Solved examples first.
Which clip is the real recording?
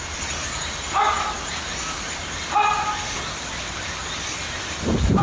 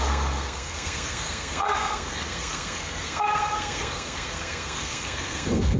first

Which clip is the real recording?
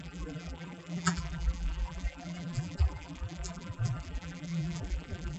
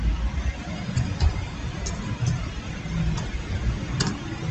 second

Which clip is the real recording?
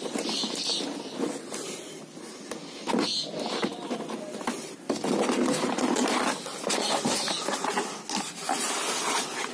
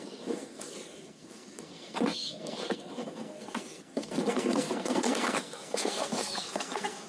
first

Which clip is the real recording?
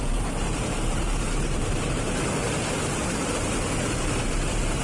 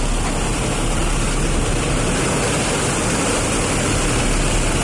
second